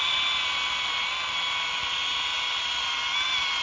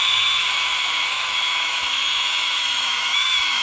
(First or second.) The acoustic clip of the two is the first